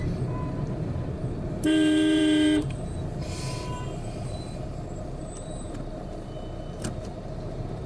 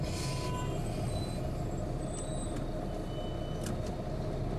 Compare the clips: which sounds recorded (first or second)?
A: second